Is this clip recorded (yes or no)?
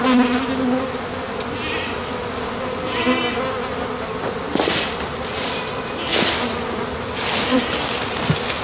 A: yes